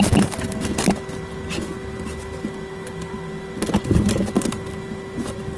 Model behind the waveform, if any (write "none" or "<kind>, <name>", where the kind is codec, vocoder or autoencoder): none